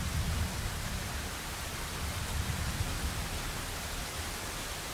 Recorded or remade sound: recorded